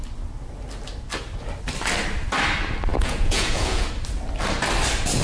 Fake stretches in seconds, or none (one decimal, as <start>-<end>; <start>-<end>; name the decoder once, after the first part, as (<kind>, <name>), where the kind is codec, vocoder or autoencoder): 2.9-3.9 (vocoder, Vocos)